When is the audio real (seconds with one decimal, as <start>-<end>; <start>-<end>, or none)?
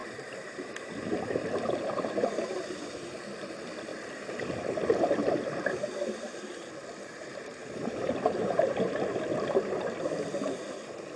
2.6-3.9; 6.4-7.6; 9.1-11.2